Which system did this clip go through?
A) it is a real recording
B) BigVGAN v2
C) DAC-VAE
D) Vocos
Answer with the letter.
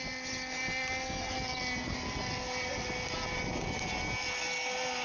A